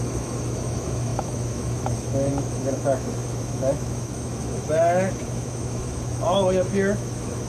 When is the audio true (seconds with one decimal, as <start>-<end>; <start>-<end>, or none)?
none

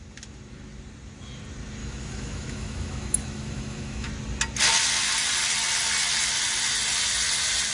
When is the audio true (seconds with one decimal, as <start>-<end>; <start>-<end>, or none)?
0.0-1.8; 4.1-7.7

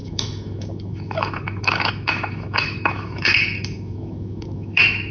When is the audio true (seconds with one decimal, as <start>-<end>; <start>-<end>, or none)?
none

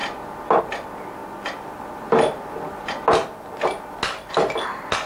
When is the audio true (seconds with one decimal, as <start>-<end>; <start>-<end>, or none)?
0.0-5.1